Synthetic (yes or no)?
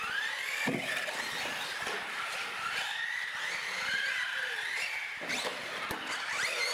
no